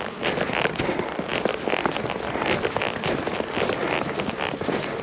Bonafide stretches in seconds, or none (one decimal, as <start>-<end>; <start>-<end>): 0.0-5.0